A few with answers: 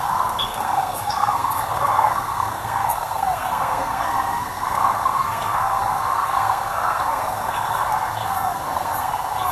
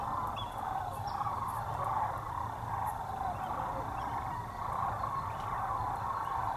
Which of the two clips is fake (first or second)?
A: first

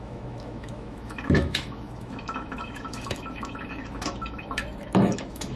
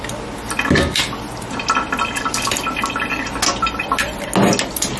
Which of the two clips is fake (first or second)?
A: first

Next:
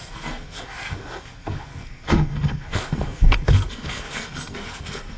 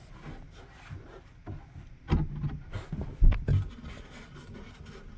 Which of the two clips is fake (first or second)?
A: first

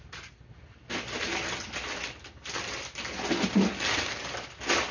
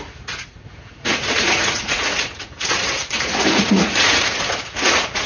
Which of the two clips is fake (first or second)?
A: second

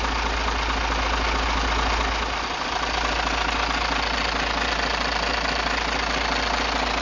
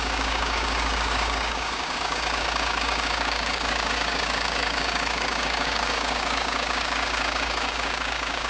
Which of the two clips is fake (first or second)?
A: second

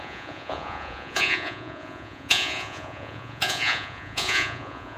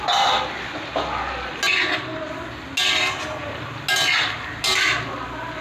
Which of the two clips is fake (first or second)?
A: first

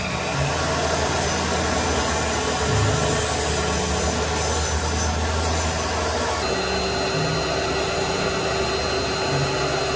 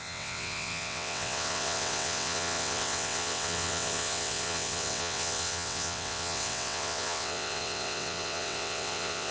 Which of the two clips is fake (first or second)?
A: second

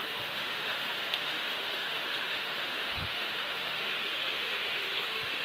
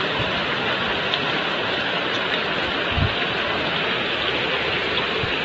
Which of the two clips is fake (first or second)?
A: first